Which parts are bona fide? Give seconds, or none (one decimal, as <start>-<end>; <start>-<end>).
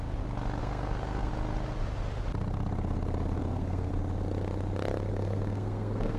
0.0-0.6; 1.3-3.4; 3.9-5.1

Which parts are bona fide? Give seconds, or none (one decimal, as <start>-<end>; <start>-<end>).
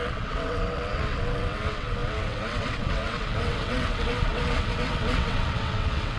none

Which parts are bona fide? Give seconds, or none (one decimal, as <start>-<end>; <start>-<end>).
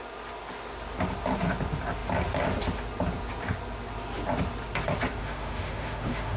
0.0-5.2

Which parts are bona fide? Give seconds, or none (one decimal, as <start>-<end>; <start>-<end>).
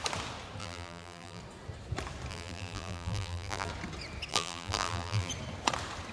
0.0-0.6; 1.4-2.3; 3.7-4.3; 5.3-6.1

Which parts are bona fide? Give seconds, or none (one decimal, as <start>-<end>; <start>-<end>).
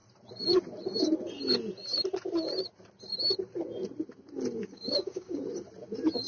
0.0-4.6; 5.4-6.3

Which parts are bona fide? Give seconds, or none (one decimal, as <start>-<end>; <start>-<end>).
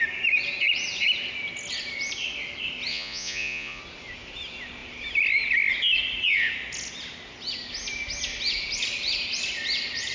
0.0-2.9; 3.8-10.1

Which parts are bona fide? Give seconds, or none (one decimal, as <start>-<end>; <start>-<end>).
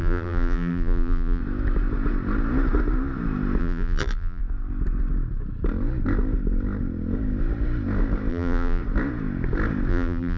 1.4-3.6; 4.4-8.3; 8.8-9.9